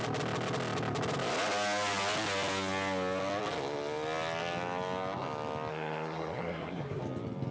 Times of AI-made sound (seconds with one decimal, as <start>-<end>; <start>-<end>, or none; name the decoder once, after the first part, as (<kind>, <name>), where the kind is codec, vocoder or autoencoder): 5.7-7.0 (codec, SNAC)